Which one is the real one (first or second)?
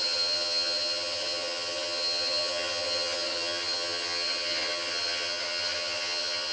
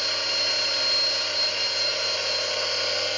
second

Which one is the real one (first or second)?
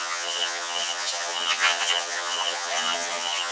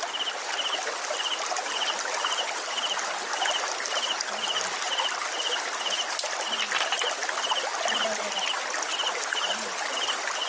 second